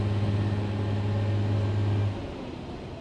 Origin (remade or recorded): recorded